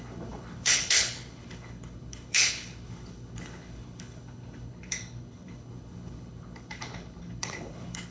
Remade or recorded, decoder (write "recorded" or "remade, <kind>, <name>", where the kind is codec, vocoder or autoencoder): remade, codec, HILCodec